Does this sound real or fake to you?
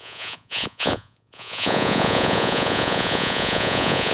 fake